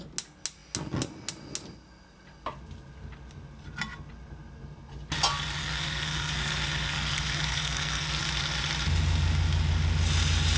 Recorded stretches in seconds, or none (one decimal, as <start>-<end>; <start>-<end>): 0.0-5.6; 8.2-10.6